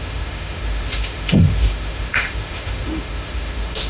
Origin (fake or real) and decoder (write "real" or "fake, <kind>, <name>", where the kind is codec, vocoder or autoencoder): fake, autoencoder, DAC-VAE